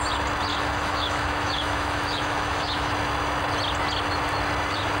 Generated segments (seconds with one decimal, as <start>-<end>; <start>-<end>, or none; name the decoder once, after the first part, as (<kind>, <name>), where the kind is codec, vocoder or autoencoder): 0.5-2.9 (autoencoder, DAC-VAE)